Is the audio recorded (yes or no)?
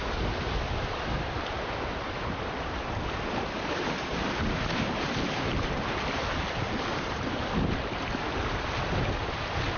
yes